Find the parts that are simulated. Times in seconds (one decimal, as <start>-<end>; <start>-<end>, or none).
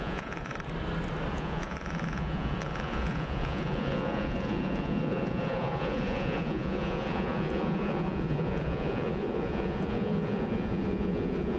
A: 0.0-0.5; 1.3-11.6